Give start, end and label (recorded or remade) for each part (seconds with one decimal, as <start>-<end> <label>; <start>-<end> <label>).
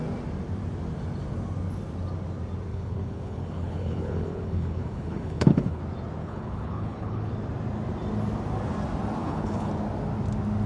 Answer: 0.0-2.7 recorded; 2.7-5.8 remade; 5.8-6.2 recorded; 6.2-7.3 remade; 7.3-9.2 recorded; 9.2-9.7 remade; 9.7-10.7 recorded